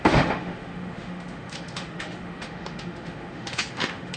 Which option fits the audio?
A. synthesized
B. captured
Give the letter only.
A